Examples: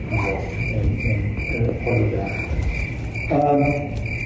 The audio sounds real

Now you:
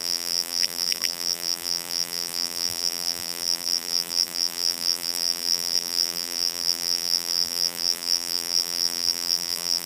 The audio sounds fake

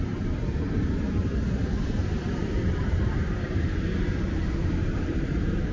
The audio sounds fake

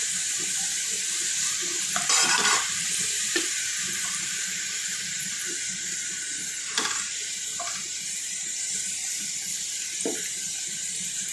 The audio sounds fake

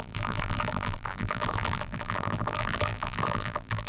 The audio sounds fake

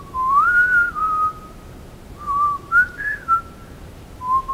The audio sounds fake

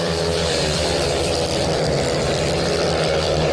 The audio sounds fake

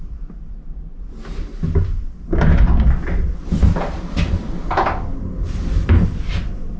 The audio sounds real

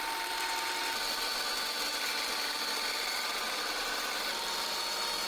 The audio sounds real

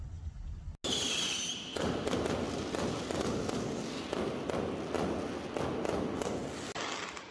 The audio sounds real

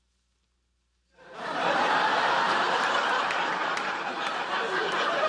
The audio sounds real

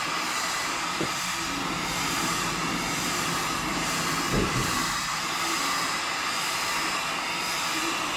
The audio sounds fake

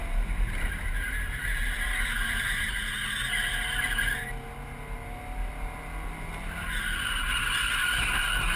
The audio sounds real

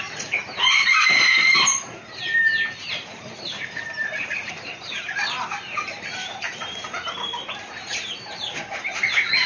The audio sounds fake